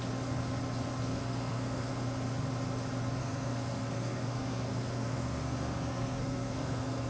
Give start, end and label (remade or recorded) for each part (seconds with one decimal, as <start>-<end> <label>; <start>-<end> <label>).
0.0-1.1 recorded; 1.1-1.9 remade; 1.9-3.2 recorded; 3.2-7.1 remade